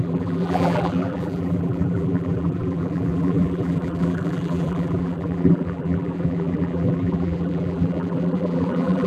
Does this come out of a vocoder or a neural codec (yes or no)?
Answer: yes